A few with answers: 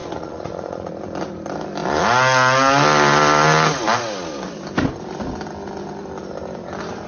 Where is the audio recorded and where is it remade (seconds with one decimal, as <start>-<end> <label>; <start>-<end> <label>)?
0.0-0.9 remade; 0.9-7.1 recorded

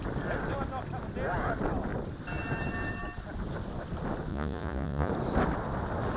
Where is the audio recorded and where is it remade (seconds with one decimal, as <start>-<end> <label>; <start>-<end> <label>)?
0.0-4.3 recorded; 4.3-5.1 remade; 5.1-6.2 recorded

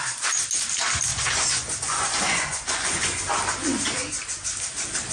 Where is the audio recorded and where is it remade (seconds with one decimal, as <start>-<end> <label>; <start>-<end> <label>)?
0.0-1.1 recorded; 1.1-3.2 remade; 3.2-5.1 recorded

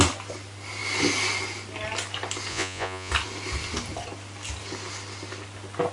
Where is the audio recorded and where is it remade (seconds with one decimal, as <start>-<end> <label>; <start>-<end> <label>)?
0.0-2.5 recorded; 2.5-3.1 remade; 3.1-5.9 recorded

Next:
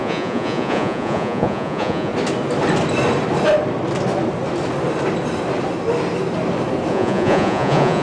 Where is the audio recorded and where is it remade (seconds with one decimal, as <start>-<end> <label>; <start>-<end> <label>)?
0.0-2.1 remade; 2.1-6.9 recorded; 6.9-8.0 remade

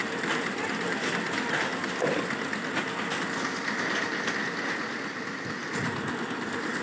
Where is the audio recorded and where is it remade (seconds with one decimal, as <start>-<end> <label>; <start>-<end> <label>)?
0.0-6.8 recorded